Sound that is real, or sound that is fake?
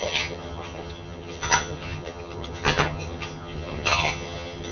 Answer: fake